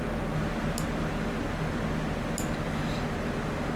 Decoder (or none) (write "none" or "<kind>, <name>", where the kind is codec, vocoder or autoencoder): none